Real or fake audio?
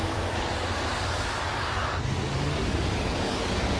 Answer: fake